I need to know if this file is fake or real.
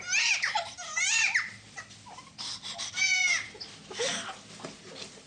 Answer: real